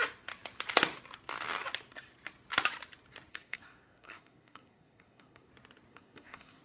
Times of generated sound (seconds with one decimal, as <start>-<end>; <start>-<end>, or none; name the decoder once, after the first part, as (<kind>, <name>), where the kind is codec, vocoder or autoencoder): 3.3-5.5 (codec, SNAC); 5.9-6.6